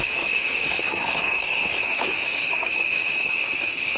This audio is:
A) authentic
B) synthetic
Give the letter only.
B